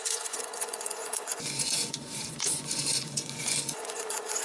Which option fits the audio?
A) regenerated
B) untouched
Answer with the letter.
A